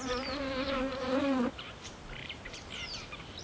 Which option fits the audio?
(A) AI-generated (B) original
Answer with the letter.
A